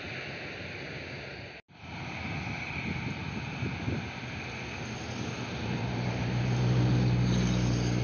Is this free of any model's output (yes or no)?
yes